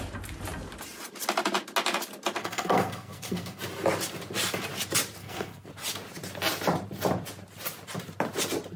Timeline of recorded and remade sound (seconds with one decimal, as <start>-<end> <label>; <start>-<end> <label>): 0.0-2.4 recorded; 2.4-3.6 remade; 3.6-5.2 recorded; 5.2-5.7 remade; 5.7-8.8 recorded